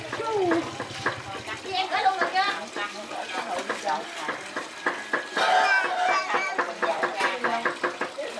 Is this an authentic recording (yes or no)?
yes